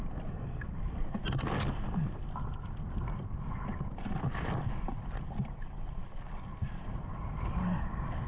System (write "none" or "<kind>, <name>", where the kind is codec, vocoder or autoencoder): none